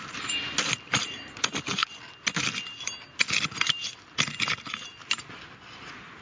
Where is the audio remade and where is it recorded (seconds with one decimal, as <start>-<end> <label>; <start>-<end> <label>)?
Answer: 0.0-6.2 recorded